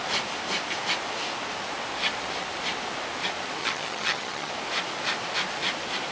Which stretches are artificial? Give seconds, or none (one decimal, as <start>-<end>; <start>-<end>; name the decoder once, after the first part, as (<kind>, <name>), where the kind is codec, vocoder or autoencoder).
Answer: 3.6-4.5 (vocoder, HiFi-GAN)